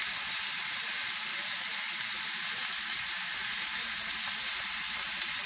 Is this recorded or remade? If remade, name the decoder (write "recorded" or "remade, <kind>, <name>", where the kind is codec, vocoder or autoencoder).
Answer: recorded